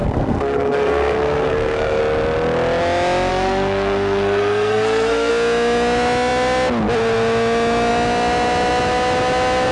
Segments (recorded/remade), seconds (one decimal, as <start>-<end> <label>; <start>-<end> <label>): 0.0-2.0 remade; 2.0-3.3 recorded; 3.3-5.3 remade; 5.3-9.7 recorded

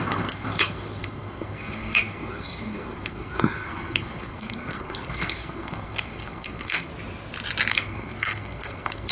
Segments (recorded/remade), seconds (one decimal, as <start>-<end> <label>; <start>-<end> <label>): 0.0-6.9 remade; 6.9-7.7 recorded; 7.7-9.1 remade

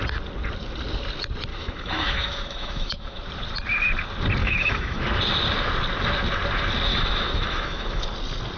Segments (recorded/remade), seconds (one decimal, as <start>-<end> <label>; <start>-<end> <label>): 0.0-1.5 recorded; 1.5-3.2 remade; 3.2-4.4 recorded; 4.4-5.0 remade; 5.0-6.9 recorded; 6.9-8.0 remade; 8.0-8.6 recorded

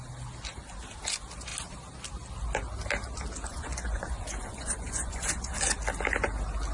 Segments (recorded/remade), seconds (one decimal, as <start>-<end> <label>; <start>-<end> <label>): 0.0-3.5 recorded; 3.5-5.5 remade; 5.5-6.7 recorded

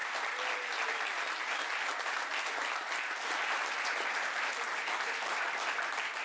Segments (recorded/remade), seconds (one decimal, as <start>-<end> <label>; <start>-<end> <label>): 0.0-6.2 recorded

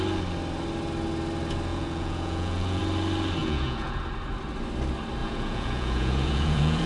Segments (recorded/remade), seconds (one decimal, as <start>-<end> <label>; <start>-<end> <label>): 0.0-1.7 recorded; 1.7-2.8 remade; 2.8-3.4 recorded; 3.4-4.0 remade; 4.0-5.2 recorded; 5.2-6.9 remade

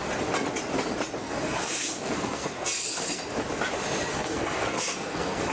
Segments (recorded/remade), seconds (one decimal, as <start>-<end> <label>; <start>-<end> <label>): 0.0-1.2 recorded; 1.2-3.2 remade; 3.2-4.1 recorded; 4.1-5.5 remade